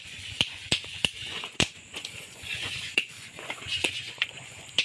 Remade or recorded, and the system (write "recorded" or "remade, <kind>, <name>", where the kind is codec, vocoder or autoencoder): remade, vocoder, Vocos